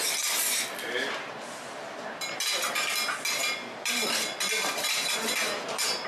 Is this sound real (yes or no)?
yes